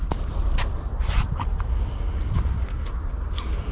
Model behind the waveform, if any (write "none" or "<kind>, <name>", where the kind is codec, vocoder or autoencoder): none